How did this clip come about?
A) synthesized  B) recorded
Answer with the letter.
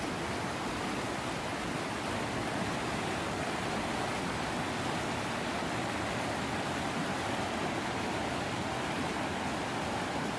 B